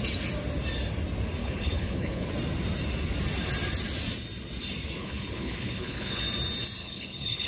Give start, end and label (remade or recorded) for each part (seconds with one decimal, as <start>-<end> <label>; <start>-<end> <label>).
0.0-1.4 recorded; 1.4-2.3 remade; 2.3-5.0 recorded; 5.0-6.2 remade; 6.2-6.8 recorded; 6.8-7.5 remade